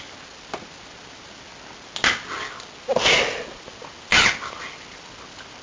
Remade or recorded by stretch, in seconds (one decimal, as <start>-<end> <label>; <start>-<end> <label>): 0.0-5.6 recorded